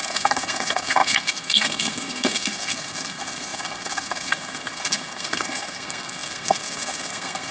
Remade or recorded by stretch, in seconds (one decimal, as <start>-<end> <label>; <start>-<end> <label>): 0.0-7.5 remade